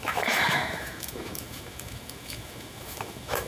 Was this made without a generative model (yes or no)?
no